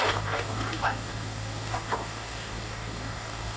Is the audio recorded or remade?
remade